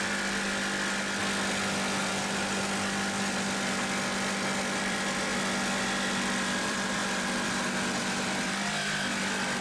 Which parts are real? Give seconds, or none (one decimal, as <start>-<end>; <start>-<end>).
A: 1.2-2.1; 5.3-6.6